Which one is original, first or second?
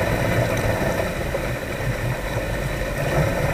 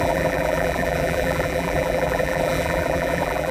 first